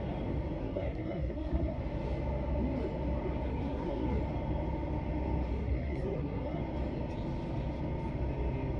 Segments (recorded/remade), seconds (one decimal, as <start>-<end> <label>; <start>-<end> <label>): 0.0-0.6 recorded; 0.6-1.8 remade; 1.8-3.5 recorded; 3.5-4.2 remade; 4.2-5.5 recorded; 5.5-6.6 remade; 6.6-8.8 recorded